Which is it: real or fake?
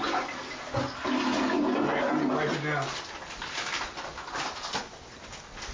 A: real